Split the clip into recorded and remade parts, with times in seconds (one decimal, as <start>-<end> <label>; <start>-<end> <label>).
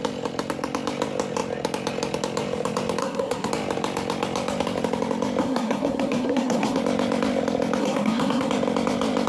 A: 0.0-3.0 recorded; 3.0-3.5 remade; 3.5-5.4 recorded; 5.4-6.8 remade; 6.8-7.8 recorded; 7.8-8.5 remade; 8.5-9.3 recorded